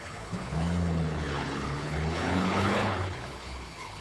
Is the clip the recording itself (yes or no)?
no